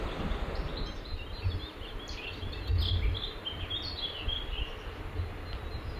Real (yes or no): yes